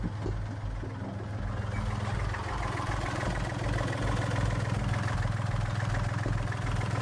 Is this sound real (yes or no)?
yes